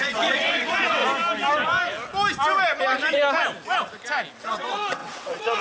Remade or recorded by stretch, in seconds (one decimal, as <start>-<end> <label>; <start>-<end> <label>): 0.0-1.0 remade; 1.0-4.4 recorded; 4.4-5.6 remade